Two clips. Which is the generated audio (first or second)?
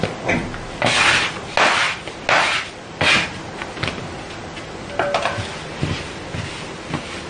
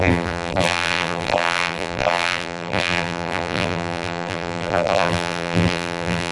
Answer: second